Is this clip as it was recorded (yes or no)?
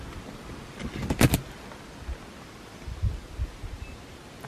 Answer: yes